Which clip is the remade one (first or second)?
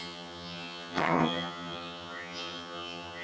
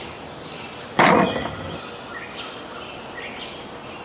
first